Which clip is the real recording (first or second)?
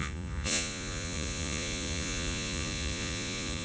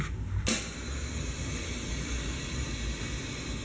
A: second